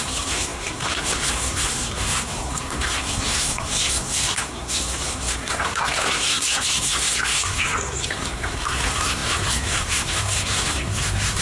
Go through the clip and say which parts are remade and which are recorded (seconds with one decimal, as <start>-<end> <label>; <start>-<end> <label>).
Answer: 0.0-11.4 remade